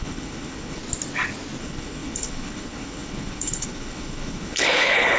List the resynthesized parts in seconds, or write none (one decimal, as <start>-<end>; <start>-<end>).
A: 0.0-0.8; 1.6-5.2